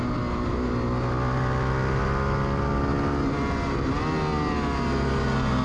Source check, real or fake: real